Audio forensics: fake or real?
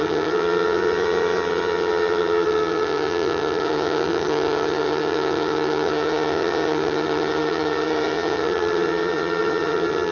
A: fake